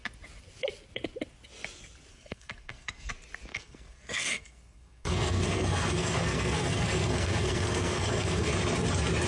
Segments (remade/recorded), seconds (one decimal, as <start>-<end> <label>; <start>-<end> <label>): 0.0-2.1 recorded; 2.1-3.1 remade; 3.1-3.5 recorded; 3.5-8.5 remade; 8.5-9.3 recorded

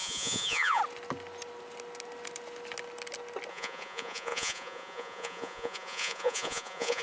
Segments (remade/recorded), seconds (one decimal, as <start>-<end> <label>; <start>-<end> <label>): 0.0-0.8 remade; 0.8-3.5 recorded; 3.5-7.0 remade

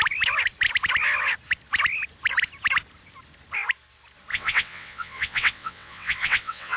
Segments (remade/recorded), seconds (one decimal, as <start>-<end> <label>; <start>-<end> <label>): 0.0-4.3 recorded; 4.3-6.8 remade